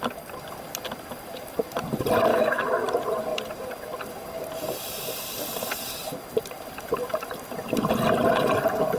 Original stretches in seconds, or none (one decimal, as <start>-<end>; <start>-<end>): 0.0-2.3; 2.8-9.0